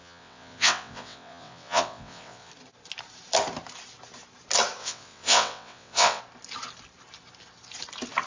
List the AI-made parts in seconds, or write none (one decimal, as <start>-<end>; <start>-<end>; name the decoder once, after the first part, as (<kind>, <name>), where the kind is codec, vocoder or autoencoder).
0.0-2.5 (vocoder, WaveNeXt); 4.8-6.2